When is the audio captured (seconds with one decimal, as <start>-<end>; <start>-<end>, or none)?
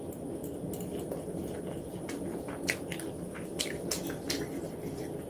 0.0-5.3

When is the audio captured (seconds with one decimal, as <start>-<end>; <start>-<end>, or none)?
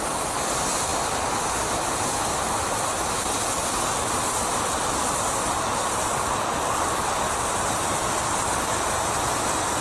0.0-9.8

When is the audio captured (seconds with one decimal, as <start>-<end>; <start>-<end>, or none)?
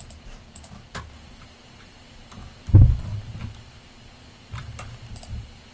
0.0-5.7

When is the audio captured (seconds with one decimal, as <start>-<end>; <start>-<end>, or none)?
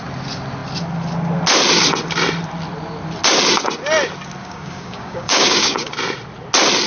0.0-4.4; 5.9-6.9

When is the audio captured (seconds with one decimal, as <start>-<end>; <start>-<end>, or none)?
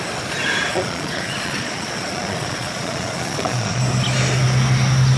0.0-0.7; 3.8-5.2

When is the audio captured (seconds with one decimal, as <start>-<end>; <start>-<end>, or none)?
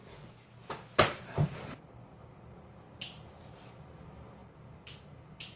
0.0-5.6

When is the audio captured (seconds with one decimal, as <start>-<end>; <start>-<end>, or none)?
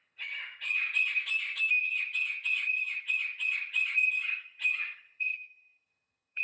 1.2-1.8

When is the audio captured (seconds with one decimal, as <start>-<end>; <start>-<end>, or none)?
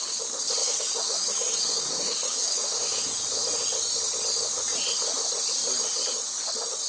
0.0-0.6; 3.0-6.9